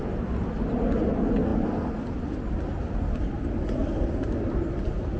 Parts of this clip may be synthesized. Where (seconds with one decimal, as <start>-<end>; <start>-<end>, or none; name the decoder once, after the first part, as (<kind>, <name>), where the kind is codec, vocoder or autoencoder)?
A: none